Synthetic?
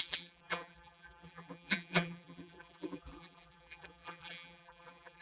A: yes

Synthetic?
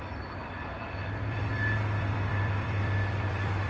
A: yes